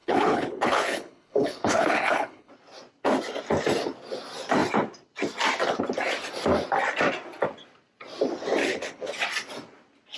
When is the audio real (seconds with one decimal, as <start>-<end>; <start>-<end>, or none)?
2.5-8.6; 9.1-10.2